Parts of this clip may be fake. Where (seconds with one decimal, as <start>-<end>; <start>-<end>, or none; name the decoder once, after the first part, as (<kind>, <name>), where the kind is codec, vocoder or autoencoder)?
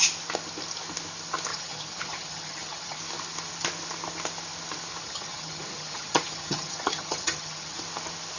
1.5-3.0 (vocoder, HiFi-GAN); 5.0-7.8